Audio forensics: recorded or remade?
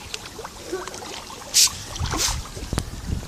recorded